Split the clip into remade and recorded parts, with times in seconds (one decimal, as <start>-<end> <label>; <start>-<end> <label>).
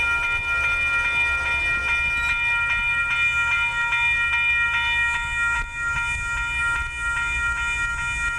0.0-8.4 recorded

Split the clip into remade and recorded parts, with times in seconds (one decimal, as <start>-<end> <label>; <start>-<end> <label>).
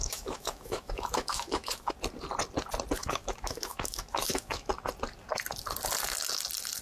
0.0-1.9 remade; 1.9-3.0 recorded; 3.0-4.7 remade; 4.7-6.8 recorded